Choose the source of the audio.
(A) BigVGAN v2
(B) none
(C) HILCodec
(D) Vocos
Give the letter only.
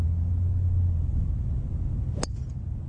B